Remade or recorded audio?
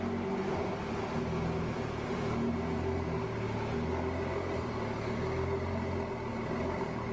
recorded